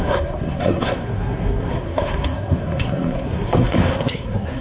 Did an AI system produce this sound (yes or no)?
yes